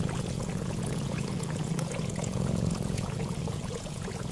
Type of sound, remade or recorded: remade